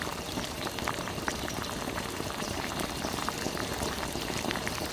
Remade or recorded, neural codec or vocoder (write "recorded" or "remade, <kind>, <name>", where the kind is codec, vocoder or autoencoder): remade, vocoder, BigVGAN v2